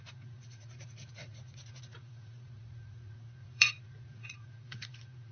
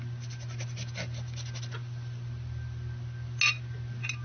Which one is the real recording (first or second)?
second